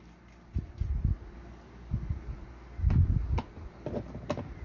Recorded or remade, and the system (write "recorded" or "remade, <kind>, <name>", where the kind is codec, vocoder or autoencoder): recorded